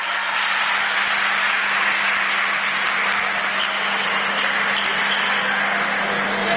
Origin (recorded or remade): recorded